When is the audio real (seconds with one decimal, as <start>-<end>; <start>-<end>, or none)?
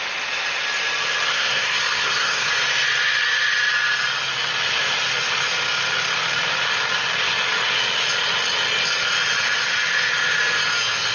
0.0-1.3; 2.5-11.1